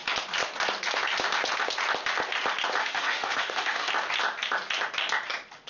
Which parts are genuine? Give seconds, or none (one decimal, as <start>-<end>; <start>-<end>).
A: 0.0-2.8; 3.9-5.7